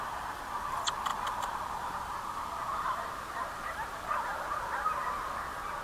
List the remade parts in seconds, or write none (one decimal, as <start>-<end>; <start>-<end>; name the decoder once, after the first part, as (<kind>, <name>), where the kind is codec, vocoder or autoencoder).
1.1-4.6 (vocoder, BigVGAN v2)